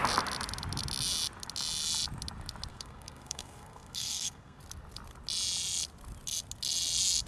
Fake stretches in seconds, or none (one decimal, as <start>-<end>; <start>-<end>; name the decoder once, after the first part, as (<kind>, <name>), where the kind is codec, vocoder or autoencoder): 2.7-4.6 (codec, SNAC)